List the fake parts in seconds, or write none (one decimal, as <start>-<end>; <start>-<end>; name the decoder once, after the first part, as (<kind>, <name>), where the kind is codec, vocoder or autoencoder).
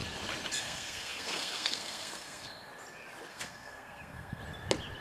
0.6-2.7 (codec, SNAC); 3.3-4.4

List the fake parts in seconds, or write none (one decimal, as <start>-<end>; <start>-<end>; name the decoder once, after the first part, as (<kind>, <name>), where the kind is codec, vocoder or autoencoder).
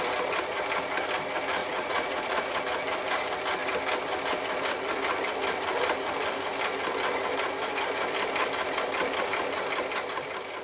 1.6-2.6 (vocoder, Vocos)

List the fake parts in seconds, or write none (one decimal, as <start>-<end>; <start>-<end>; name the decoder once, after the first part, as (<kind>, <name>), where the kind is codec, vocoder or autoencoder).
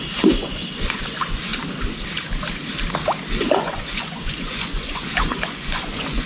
0.0-1.5 (vocoder, Vocos); 3.4-6.3